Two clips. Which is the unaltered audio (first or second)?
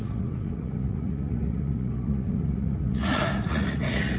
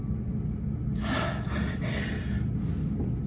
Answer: second